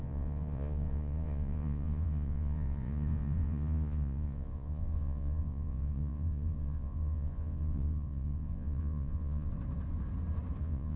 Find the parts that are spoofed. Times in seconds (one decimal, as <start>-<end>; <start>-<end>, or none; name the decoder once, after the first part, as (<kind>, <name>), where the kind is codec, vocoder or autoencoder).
0.0-9.5 (vocoder, Vocos); 10.6-11.0